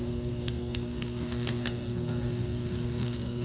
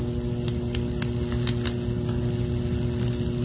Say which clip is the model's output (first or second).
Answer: first